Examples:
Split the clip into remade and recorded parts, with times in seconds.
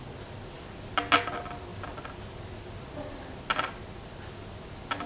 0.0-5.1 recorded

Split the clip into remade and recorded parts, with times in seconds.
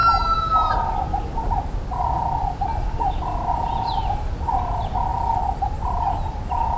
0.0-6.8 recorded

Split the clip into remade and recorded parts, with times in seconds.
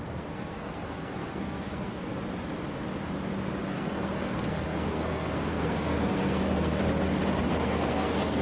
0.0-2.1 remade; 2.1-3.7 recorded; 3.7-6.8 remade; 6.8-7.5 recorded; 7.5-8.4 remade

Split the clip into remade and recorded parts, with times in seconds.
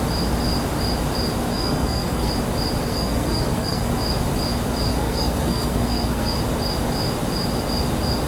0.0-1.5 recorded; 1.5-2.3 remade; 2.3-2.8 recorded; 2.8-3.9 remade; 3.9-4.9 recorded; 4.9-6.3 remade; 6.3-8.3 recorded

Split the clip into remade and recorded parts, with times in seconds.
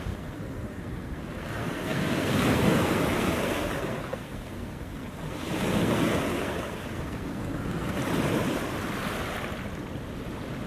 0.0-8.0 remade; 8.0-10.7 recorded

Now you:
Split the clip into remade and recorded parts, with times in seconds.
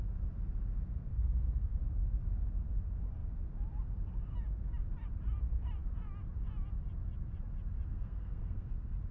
0.0-1.1 recorded; 1.1-1.8 remade; 1.8-7.9 recorded; 7.9-8.7 remade; 8.7-9.1 recorded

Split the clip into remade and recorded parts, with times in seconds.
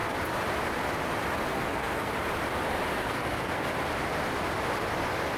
0.0-1.5 recorded; 1.5-2.1 remade; 2.1-2.9 recorded; 2.9-3.7 remade; 3.7-5.4 recorded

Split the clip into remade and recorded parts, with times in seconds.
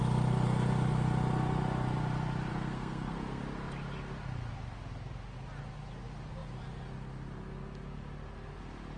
0.0-2.5 recorded; 2.5-3.4 remade; 3.4-9.0 recorded